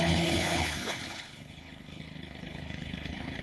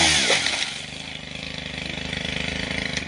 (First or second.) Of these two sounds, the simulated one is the first